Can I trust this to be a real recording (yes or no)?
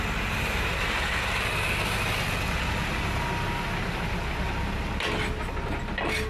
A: yes